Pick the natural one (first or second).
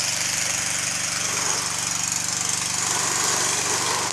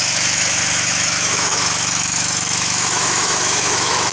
first